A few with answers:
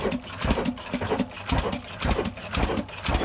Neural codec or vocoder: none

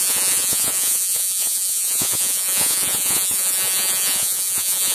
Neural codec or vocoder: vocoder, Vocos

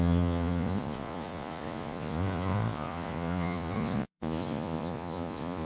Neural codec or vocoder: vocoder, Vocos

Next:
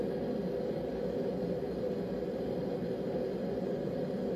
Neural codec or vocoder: none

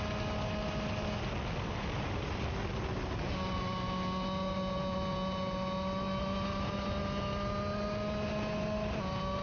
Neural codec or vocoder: none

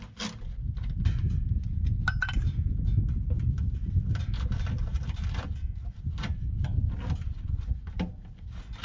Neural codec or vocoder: none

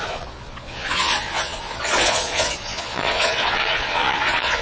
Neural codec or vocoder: vocoder, Vocos